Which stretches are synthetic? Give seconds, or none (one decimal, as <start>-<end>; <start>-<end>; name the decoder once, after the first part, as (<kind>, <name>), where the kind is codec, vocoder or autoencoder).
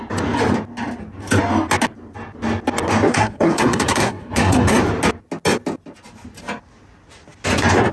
3.1-4.8 (codec, SNAC)